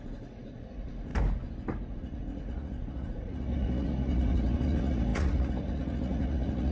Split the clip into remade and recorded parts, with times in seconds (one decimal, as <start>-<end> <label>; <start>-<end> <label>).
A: 0.0-1.1 remade; 1.1-1.9 recorded; 1.9-6.7 remade